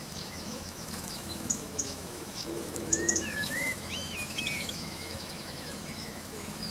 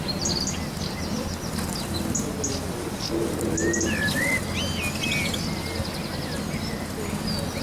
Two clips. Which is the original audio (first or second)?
second